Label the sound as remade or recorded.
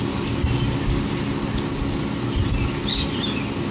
recorded